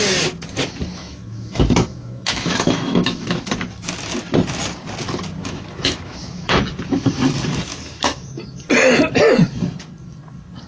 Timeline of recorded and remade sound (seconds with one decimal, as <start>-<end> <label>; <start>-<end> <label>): 0.0-1.0 recorded; 1.0-3.5 remade; 3.5-5.4 recorded; 5.4-6.6 remade; 6.6-7.7 recorded; 7.7-8.4 remade; 8.4-10.7 recorded

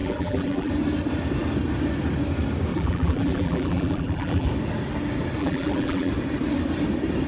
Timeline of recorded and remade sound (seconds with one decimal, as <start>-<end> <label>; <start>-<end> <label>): 0.0-0.7 remade; 0.7-2.7 recorded; 2.7-4.5 remade; 4.5-5.4 recorded; 5.4-6.1 remade; 6.1-7.3 recorded

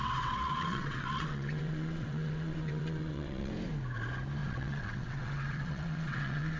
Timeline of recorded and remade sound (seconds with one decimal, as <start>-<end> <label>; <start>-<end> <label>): 0.0-3.5 remade; 3.5-4.4 recorded; 4.4-6.6 remade

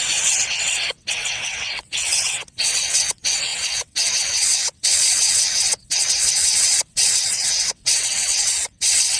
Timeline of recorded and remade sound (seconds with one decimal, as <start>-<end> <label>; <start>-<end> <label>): 0.0-9.2 remade